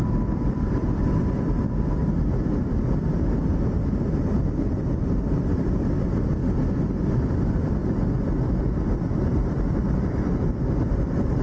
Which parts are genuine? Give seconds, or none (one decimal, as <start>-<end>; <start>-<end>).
2.0-3.0; 6.4-7.3; 7.8-8.5